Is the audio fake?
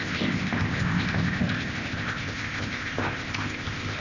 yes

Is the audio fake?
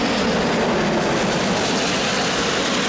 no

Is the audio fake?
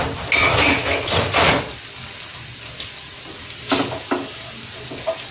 no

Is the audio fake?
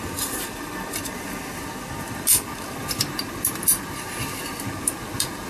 no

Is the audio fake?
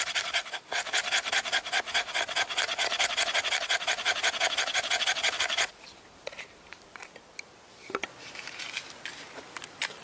no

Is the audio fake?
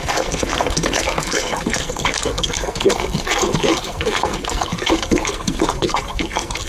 yes